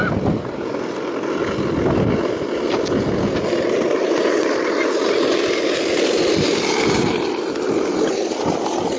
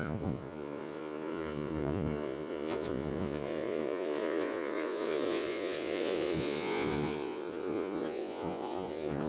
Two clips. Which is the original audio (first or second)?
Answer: first